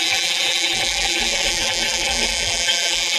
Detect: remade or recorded remade